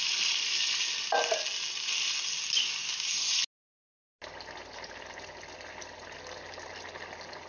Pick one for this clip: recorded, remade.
recorded